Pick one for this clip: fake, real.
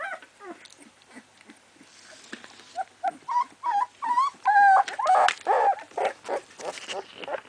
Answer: real